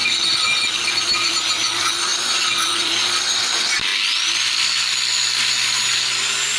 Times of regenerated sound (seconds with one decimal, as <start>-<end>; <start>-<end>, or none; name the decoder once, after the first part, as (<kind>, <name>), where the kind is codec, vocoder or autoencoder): 0.0-3.9 (vocoder, BigVGAN v2)